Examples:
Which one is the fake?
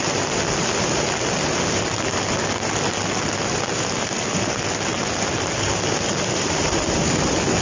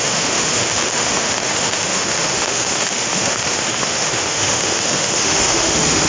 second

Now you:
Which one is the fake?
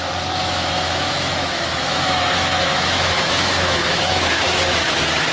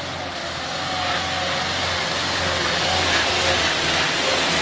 first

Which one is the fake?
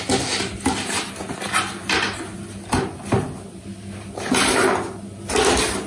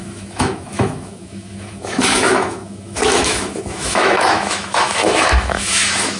second